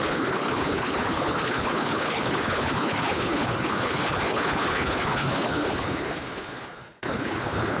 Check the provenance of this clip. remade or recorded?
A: remade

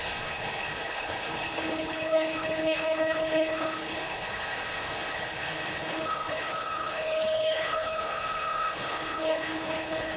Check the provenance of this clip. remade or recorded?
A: remade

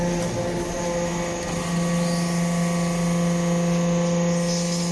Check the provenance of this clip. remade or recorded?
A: recorded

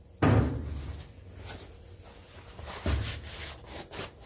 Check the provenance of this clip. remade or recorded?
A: recorded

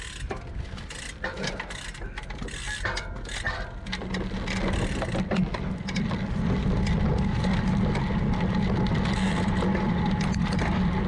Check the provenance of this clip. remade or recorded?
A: recorded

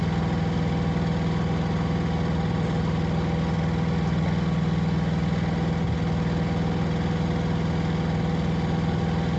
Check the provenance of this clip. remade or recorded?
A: recorded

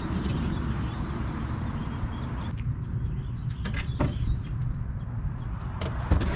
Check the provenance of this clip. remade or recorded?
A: recorded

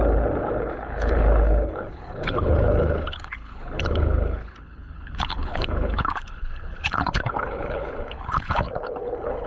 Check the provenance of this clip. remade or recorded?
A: remade